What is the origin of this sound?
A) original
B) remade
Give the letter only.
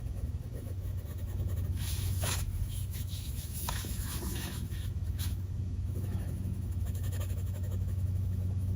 B